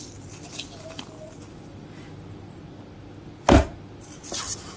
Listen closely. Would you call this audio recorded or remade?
recorded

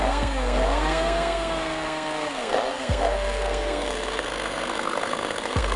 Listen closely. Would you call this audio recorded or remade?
remade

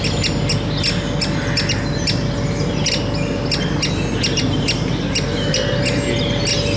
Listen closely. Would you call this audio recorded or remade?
recorded